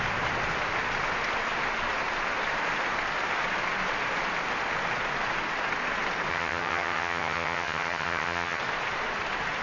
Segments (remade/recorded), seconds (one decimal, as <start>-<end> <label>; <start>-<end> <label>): 0.0-6.3 recorded; 6.3-8.6 remade; 8.6-9.6 recorded